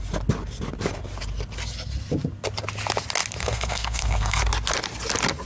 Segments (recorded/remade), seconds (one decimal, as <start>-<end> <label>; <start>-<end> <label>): 0.0-3.4 recorded; 3.4-4.4 remade; 4.4-5.5 recorded